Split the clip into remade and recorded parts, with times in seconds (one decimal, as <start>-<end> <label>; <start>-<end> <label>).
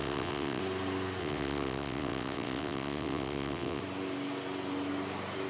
0.0-0.6 remade; 0.6-1.2 recorded; 1.2-3.8 remade; 3.8-5.5 recorded